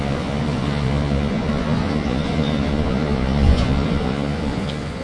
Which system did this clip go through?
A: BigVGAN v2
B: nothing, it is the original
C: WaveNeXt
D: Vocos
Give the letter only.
D